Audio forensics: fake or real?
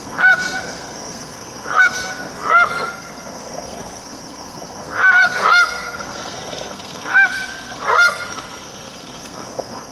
fake